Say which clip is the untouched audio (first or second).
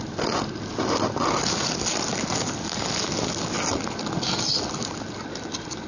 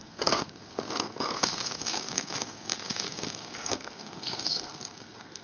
first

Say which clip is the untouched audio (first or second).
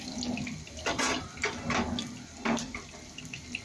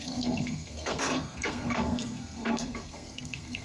first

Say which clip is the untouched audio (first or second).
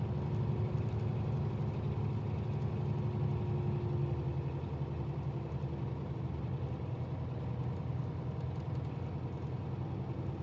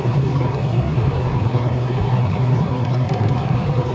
first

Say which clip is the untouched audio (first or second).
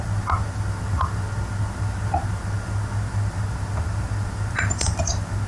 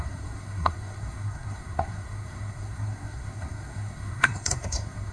first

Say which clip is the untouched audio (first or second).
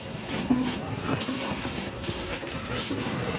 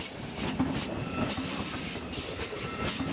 second